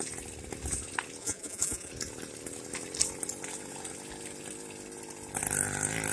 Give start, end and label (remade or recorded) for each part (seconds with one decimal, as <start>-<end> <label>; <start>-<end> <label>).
0.0-1.2 recorded; 1.2-1.9 remade; 1.9-6.1 recorded